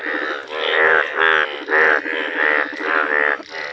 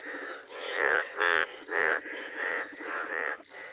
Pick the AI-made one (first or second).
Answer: second